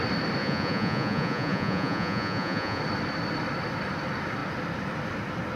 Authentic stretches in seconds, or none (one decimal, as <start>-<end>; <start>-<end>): 0.0-0.4; 2.8-5.6